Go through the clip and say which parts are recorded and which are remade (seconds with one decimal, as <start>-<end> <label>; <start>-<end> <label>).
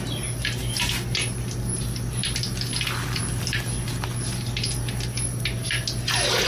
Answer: 0.0-6.5 recorded